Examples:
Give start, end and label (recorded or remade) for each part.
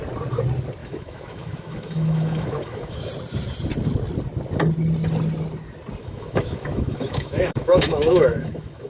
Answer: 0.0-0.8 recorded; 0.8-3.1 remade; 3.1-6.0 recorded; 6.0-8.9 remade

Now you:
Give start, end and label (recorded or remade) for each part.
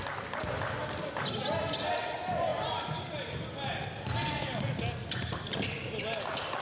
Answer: 0.0-6.6 recorded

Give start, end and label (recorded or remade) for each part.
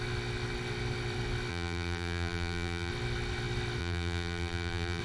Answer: 0.0-1.5 recorded; 1.5-2.9 remade; 2.9-3.8 recorded; 3.8-5.0 remade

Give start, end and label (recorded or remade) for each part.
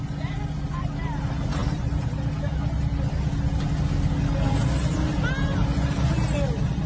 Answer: 0.0-6.9 recorded